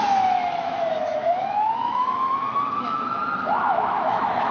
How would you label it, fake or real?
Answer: fake